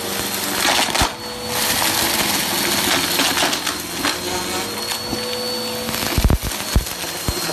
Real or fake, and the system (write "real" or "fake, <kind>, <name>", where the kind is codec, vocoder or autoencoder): real